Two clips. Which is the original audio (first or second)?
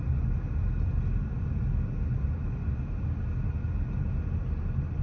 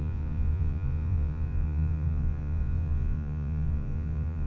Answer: first